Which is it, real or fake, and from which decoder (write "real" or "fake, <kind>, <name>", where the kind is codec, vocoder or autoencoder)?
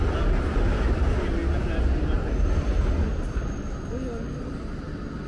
real